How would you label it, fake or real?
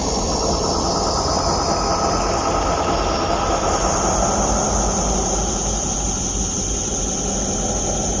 real